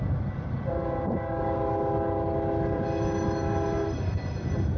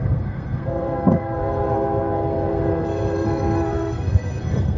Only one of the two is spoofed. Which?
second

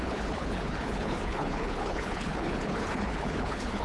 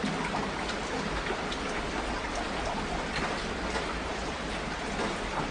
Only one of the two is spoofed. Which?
first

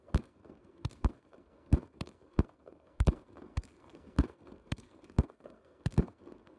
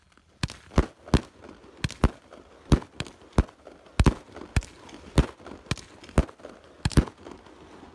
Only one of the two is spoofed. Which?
first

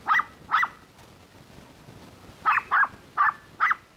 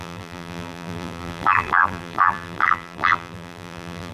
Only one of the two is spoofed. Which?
second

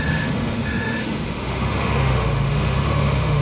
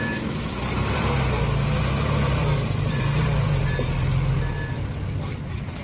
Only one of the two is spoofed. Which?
first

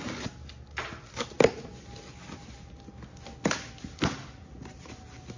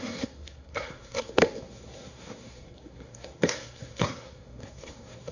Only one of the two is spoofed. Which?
second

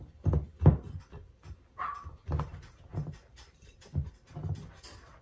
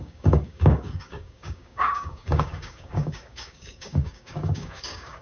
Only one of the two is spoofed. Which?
second